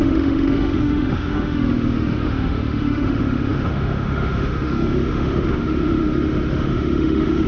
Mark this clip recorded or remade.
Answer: remade